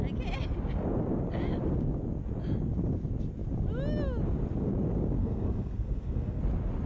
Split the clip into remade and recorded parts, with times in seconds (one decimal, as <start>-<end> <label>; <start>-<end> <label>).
0.0-5.2 recorded; 5.2-6.4 remade; 6.4-6.9 recorded